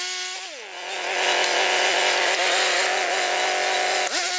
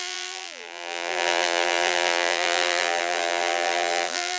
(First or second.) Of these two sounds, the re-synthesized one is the second